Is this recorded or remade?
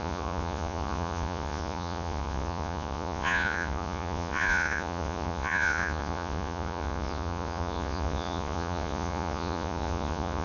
remade